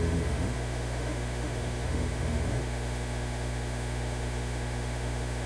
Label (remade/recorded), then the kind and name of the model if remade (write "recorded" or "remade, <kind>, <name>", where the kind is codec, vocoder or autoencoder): remade, autoencoder, DAC-VAE